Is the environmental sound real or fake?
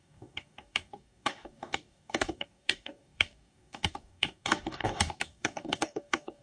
fake